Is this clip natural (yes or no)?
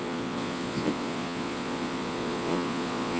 no